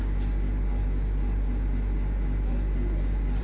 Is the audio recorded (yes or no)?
yes